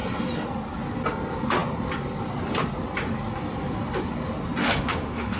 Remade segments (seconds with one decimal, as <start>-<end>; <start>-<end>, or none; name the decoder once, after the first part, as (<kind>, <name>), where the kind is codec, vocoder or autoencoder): 4.6-5.4 (autoencoder, DAC-VAE)